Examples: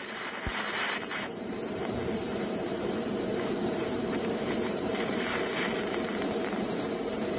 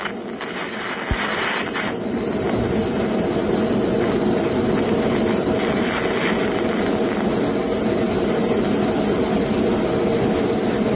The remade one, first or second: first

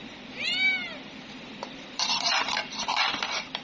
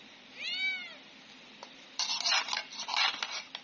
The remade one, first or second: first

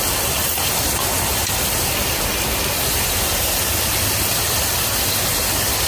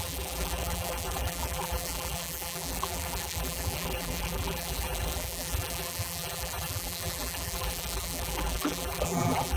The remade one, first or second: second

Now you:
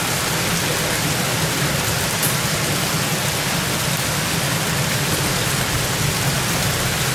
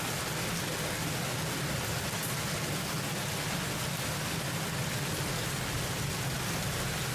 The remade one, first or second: first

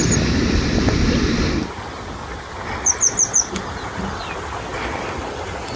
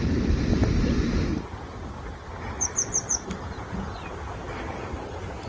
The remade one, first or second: second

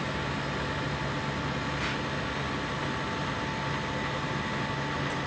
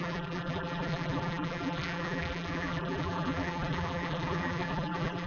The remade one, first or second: second